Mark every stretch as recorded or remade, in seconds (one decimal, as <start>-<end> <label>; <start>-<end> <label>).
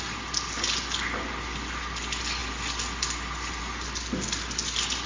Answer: 0.0-5.1 recorded